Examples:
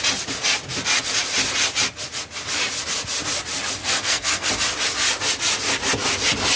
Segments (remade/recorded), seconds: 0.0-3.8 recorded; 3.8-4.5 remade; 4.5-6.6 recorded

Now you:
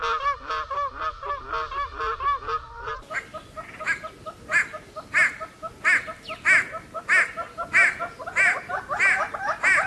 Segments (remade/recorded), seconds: 0.0-9.9 recorded

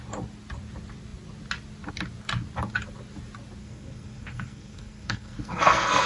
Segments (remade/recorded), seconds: 0.0-3.6 recorded; 3.6-6.1 remade